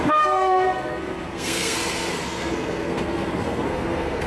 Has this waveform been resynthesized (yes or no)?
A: yes